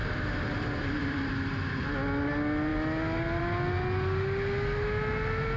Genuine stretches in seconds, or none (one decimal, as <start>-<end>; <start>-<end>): 1.3-5.6

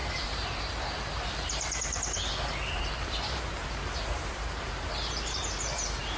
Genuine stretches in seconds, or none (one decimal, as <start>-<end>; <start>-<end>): 2.3-3.0

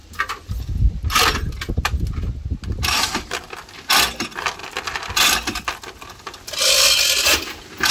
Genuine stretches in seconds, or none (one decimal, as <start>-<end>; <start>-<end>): 1.4-7.9

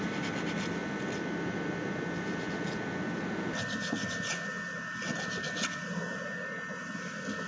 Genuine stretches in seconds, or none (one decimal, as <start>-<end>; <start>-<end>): 0.0-7.5

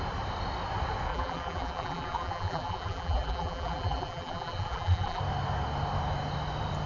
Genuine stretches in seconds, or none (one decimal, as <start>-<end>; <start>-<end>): 0.0-1.1; 5.2-6.9

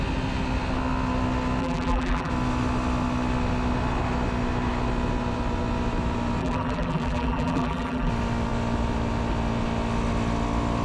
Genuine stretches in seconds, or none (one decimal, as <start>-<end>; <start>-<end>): 0.0-1.6; 2.3-6.4; 8.1-10.8

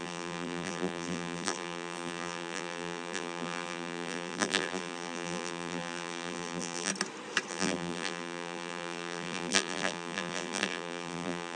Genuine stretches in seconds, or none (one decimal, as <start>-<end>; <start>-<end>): 6.9-7.5

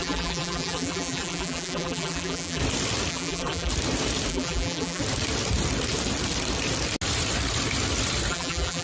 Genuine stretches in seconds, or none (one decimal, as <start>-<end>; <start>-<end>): 2.6-3.1; 3.7-4.3; 5.0-8.3